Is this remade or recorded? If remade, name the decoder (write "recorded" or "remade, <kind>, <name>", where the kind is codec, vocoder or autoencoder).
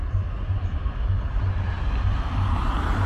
recorded